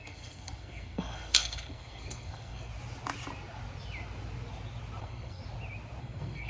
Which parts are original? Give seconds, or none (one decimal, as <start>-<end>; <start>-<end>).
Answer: 2.7-5.0; 5.4-6.0